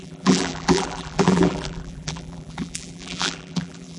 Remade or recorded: remade